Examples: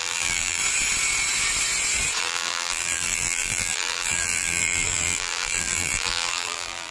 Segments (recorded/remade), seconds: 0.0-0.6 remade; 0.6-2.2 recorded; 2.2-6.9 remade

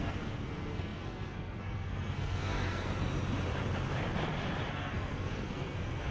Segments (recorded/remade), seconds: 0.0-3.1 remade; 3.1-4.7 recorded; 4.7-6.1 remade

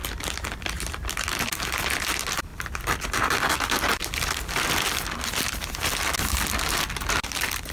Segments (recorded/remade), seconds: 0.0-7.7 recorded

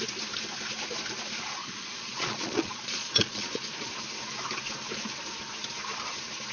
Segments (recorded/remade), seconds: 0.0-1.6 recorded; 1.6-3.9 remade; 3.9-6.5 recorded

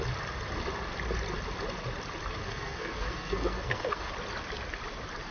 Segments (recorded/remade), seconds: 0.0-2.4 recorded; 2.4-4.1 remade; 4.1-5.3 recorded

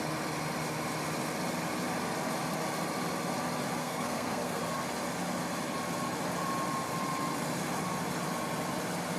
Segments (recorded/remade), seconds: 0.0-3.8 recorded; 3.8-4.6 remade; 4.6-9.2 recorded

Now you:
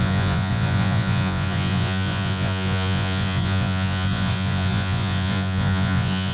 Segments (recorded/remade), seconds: 0.0-6.3 remade